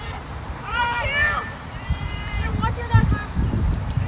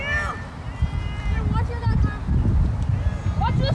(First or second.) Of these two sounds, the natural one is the second